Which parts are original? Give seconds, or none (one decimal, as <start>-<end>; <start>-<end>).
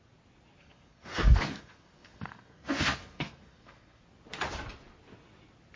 0.0-0.6; 4.0-5.8